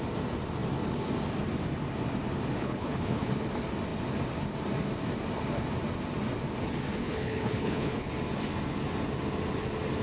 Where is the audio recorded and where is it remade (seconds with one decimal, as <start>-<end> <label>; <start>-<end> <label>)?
0.0-2.6 recorded; 2.6-3.3 remade; 3.3-7.0 recorded; 7.0-8.1 remade; 8.1-10.0 recorded